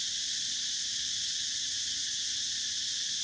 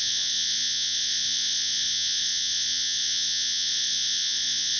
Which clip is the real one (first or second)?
first